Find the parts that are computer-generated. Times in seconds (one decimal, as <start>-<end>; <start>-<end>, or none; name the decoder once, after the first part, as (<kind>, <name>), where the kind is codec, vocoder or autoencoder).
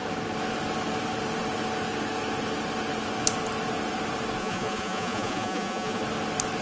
4.4-6.0 (vocoder, Vocos)